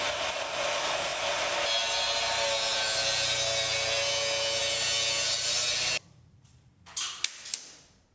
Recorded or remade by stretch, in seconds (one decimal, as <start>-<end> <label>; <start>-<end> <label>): 0.0-8.1 recorded